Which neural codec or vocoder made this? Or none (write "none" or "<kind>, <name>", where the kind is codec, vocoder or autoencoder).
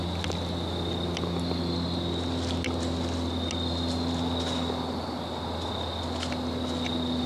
none